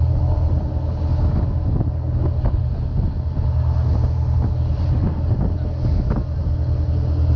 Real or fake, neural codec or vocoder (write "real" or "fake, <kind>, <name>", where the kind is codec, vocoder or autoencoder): real